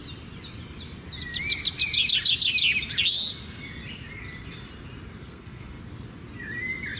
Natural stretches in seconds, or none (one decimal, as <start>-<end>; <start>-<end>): 0.0-5.2; 5.8-7.0